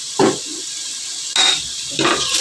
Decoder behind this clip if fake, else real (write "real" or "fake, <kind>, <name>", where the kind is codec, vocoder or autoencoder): real